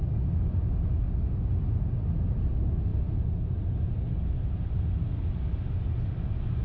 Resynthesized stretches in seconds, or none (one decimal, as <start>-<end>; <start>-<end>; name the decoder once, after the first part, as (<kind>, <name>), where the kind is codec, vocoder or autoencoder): none